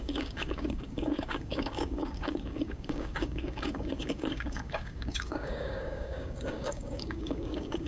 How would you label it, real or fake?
fake